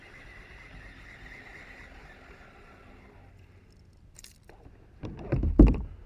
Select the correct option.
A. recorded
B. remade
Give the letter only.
A